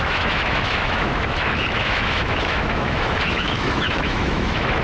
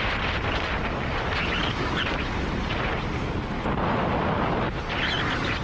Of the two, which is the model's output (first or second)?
first